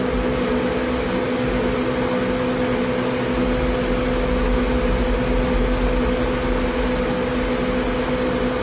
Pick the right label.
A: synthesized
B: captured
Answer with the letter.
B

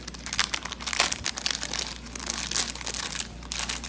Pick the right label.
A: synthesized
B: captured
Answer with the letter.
B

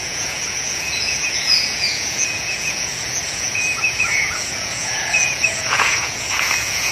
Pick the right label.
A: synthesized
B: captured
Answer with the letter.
A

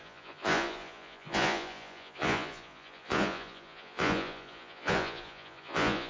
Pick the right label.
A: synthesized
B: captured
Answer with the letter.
A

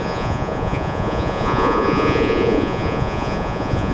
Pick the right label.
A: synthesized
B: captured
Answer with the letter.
A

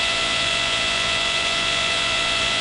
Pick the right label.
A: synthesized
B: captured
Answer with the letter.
A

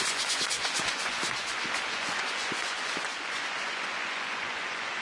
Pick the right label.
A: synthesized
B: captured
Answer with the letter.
A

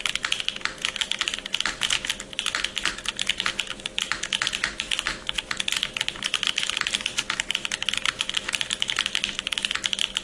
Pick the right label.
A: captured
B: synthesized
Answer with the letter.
A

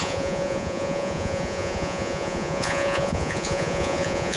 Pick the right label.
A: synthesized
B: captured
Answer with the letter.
A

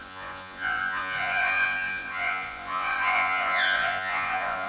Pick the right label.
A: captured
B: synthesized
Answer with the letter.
B